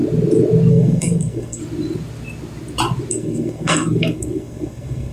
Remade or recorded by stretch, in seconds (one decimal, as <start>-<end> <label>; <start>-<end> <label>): 0.0-0.7 recorded; 0.7-1.6 remade; 1.6-3.1 recorded; 3.1-5.1 remade